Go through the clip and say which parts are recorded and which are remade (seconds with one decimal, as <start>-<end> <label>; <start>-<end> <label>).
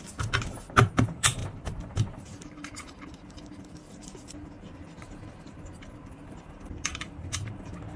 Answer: 0.0-8.0 remade